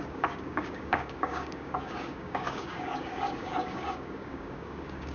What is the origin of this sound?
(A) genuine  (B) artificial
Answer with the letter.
B